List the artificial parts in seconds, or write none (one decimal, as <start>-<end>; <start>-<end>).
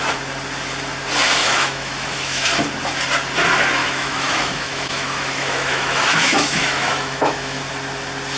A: 1.4-2.5; 3.8-7.6